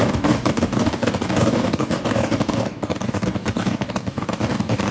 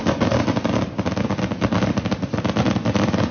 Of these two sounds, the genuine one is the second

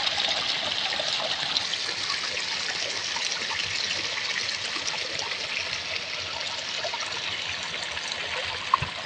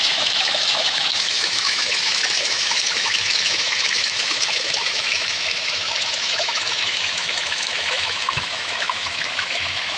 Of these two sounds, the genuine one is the first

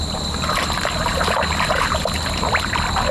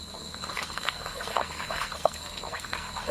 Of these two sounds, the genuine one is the first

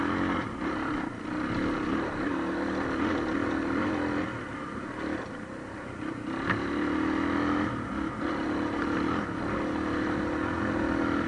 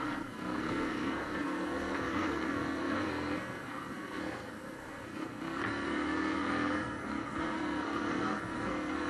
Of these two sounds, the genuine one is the first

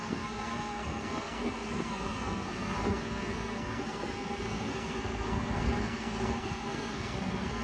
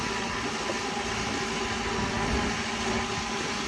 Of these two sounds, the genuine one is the second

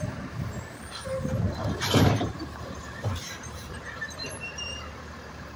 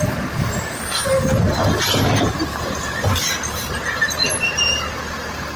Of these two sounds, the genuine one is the second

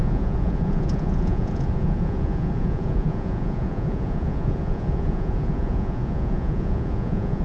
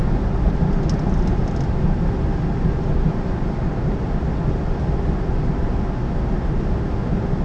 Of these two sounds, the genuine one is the second